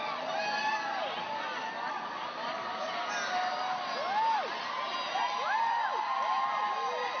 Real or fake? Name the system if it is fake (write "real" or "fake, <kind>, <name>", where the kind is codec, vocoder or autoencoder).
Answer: real